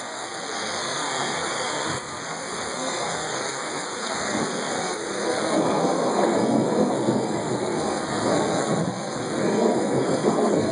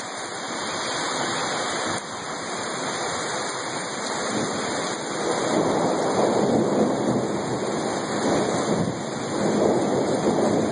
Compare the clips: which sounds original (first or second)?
second